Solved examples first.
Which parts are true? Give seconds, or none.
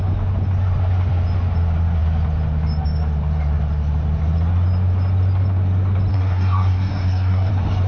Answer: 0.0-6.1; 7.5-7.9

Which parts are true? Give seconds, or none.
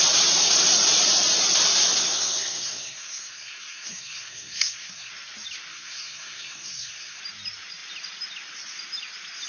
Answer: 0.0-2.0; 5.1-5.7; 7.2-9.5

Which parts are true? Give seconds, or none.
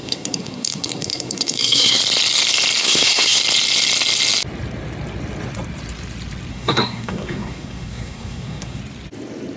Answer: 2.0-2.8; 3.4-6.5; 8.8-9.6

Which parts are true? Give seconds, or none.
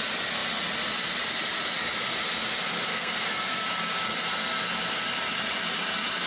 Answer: 0.0-2.9; 3.7-6.3